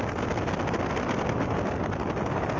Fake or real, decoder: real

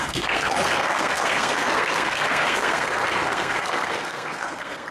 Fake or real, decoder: fake, codec, SNAC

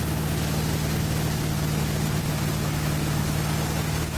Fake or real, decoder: real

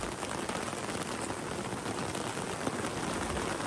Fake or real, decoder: real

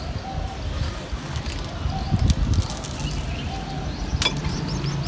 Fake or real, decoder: real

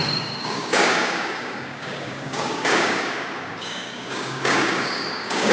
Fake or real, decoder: fake, codec, DAC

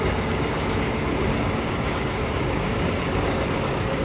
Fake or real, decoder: fake, codec, DAC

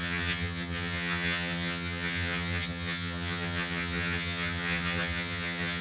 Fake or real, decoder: fake, vocoder, HiFi-GAN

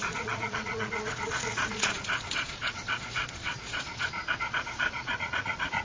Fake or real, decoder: fake, vocoder, Vocos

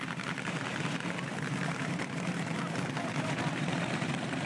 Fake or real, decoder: fake, vocoder, BigVGAN v2